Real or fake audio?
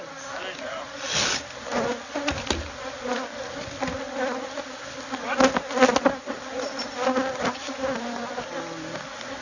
real